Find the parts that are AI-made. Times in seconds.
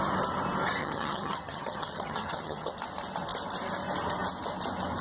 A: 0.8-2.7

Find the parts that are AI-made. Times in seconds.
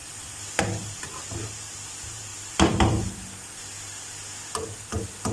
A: 0.0-1.2; 2.3-4.0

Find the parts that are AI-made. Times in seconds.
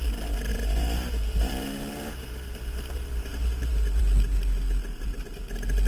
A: 0.5-4.0; 4.9-5.4